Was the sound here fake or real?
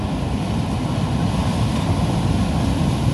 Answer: real